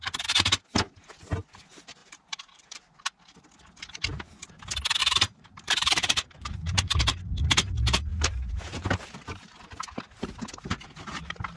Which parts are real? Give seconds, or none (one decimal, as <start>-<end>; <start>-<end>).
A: 0.0-2.0; 2.8-5.0; 7.0-8.1; 9.7-11.6